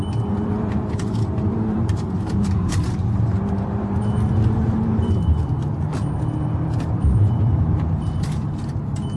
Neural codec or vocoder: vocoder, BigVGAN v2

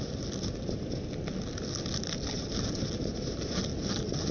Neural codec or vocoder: none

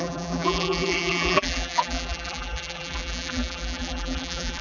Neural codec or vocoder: vocoder, BigVGAN v2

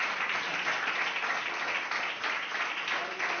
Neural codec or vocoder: none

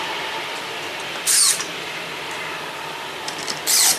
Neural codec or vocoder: none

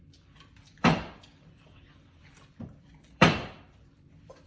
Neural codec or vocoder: vocoder, BigVGAN v2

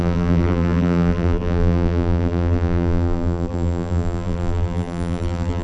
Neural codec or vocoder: vocoder, BigVGAN v2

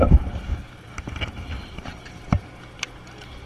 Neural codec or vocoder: none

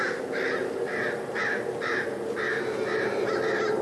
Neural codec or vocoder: none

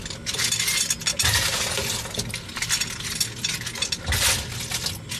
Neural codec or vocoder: none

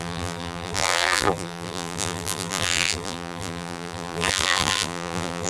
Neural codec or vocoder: vocoder, BigVGAN v2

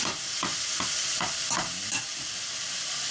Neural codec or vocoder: none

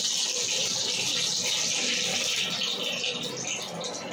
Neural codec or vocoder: none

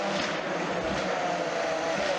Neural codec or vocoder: none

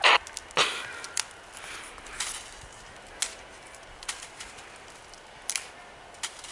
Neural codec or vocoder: none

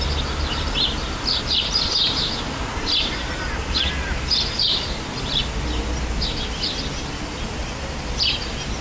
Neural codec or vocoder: none